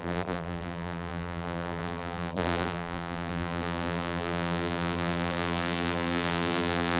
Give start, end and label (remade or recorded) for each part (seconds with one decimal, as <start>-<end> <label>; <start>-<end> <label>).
0.0-7.0 remade